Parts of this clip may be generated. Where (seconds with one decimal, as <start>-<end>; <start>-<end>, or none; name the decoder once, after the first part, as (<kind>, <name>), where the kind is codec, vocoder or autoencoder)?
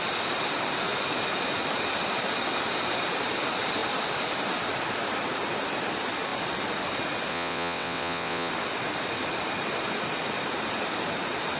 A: 7.3-8.5 (vocoder, WaveNeXt)